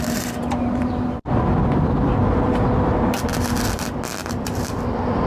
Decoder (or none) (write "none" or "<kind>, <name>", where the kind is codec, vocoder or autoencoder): vocoder, BigVGAN v2